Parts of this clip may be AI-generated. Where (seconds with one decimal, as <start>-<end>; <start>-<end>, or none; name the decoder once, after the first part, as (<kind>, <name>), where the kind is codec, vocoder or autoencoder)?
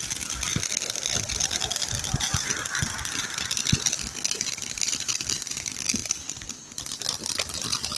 none